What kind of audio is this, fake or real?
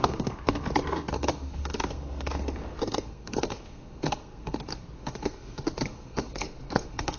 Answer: fake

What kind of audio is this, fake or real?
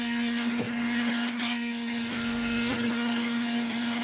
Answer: fake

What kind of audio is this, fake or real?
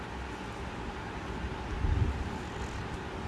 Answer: real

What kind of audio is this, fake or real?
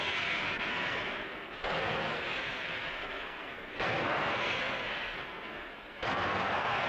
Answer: fake